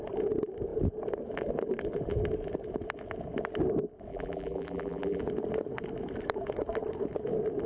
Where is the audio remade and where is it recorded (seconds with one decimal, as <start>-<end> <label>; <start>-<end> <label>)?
0.0-4.1 recorded; 4.1-5.2 remade; 5.2-7.7 recorded